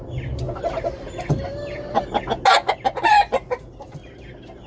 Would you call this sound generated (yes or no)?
no